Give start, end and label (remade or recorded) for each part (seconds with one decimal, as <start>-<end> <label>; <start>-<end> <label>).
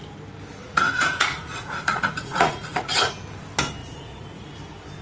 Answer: 0.0-0.6 recorded; 0.6-3.1 remade; 3.1-3.8 recorded; 3.8-4.6 remade; 4.6-5.0 recorded